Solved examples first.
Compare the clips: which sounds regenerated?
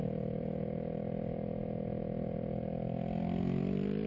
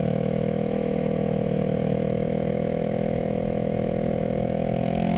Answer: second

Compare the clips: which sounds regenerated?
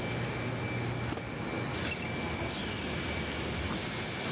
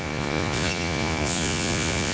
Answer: second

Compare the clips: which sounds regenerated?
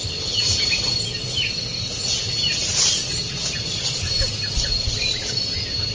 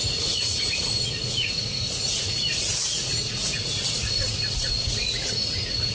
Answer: second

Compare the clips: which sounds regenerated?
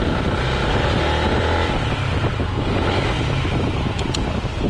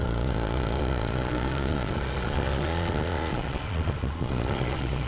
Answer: second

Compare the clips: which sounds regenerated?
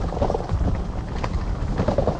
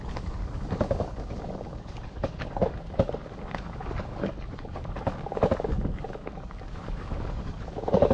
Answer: second